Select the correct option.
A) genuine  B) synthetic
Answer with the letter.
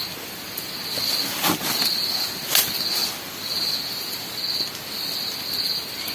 A